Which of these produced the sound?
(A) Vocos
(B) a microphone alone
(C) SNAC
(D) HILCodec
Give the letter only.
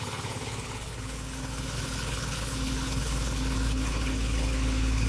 D